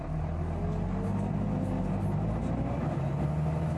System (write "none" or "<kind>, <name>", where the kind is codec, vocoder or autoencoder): none